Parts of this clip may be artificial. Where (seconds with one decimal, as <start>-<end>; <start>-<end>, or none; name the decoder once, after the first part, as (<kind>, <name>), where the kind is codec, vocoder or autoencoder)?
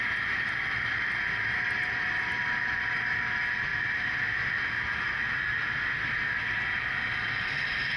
none